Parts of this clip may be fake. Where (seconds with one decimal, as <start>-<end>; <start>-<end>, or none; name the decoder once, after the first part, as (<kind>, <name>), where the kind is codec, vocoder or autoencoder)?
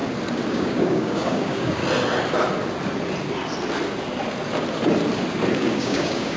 0.5-1.8 (codec, DAC); 5.6-6.4